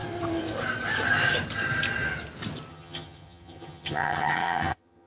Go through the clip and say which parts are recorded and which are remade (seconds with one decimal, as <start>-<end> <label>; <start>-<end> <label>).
0.0-2.7 recorded; 2.7-5.1 remade